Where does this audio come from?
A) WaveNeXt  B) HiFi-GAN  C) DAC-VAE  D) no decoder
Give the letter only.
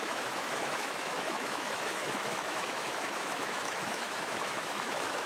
C